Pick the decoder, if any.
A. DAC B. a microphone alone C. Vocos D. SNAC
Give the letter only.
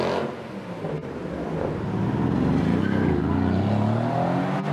B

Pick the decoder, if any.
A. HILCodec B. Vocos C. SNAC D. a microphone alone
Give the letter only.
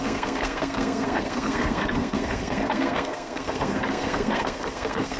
C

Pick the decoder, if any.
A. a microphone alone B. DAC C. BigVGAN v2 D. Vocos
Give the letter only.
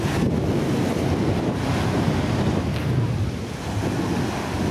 A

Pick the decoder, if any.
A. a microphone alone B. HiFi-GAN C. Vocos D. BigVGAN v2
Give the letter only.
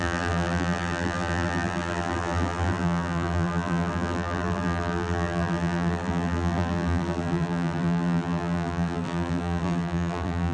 D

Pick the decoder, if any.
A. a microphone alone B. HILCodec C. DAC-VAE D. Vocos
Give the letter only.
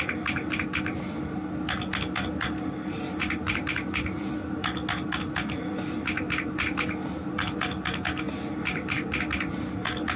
A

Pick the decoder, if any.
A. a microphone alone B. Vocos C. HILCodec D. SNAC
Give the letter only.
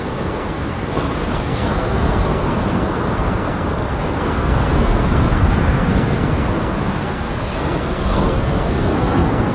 D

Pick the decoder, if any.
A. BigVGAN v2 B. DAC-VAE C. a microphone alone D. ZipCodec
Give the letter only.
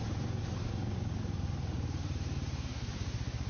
A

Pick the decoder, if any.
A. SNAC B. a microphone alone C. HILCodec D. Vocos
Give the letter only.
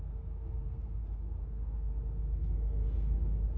A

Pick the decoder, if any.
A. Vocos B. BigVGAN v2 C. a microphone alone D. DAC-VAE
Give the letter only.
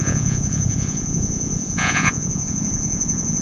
A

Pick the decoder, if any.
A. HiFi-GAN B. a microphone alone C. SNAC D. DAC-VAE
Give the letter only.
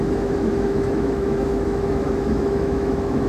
D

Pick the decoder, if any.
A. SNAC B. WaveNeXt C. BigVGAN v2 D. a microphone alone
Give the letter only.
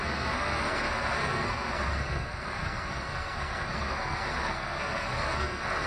A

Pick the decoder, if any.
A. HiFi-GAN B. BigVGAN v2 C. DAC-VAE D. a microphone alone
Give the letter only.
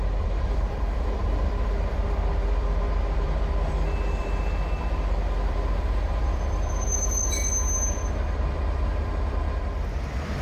B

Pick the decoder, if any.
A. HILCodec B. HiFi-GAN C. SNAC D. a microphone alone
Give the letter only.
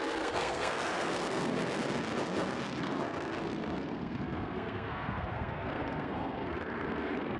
C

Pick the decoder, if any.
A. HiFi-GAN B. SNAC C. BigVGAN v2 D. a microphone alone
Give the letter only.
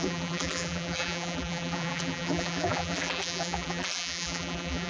C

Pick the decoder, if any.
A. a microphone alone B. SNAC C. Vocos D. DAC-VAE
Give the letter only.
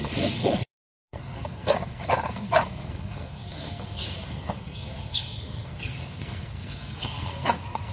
B